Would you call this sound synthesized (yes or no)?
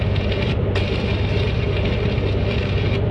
no